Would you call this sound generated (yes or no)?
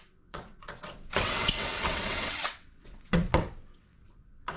yes